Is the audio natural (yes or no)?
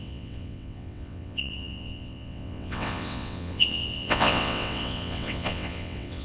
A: no